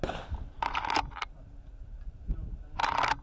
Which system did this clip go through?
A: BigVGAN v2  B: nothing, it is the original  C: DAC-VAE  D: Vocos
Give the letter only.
B